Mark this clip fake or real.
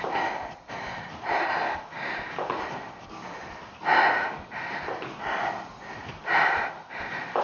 real